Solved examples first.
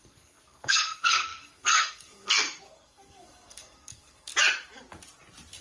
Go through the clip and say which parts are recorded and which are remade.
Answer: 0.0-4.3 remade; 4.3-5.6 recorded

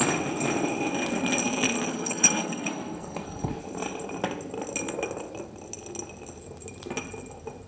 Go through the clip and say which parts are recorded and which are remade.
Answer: 0.0-1.9 recorded; 1.9-3.5 remade; 3.5-7.7 recorded

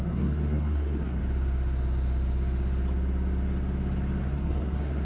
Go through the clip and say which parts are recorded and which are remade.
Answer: 0.0-1.2 remade; 1.2-4.2 recorded; 4.2-5.0 remade

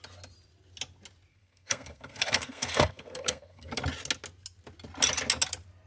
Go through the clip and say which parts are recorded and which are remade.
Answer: 0.0-1.3 recorded; 1.3-3.8 remade; 3.8-5.9 recorded

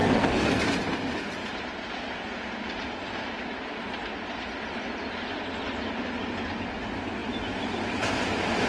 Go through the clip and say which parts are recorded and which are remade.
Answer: 0.0-0.6 remade; 0.6-8.7 recorded

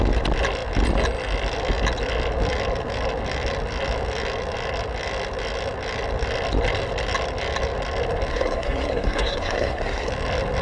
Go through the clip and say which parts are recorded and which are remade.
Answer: 0.0-8.3 recorded; 8.3-10.1 remade; 10.1-10.6 recorded